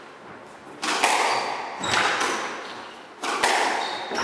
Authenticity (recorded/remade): recorded